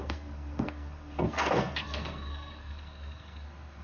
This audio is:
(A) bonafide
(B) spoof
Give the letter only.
B